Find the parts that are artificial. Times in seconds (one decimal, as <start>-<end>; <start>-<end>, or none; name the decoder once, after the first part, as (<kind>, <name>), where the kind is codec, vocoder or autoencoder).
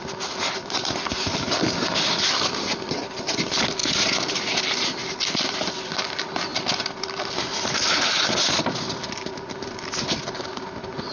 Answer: none